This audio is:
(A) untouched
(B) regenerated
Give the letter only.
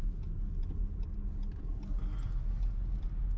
A